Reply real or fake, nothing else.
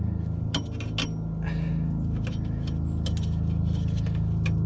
real